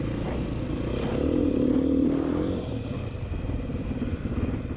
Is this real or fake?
real